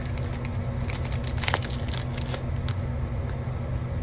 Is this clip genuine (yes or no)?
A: yes